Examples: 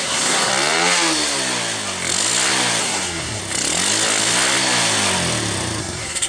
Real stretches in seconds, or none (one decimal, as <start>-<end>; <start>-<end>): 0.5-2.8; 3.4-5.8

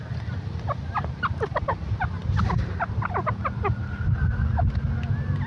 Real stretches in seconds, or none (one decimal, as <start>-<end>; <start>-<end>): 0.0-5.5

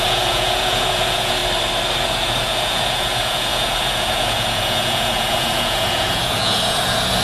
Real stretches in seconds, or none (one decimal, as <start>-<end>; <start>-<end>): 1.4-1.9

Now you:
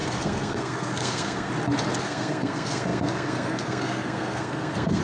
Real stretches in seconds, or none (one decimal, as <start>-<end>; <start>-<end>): 1.5-2.0

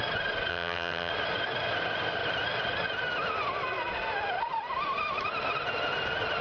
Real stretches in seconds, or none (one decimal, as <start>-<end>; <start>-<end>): 0.0-0.5; 1.1-6.4

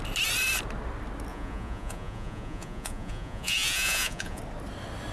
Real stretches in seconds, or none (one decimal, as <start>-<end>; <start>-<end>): 0.0-1.3; 4.4-5.1